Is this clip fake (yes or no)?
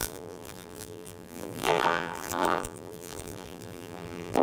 yes